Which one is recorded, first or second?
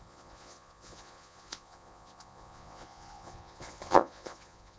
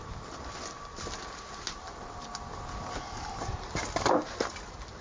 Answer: second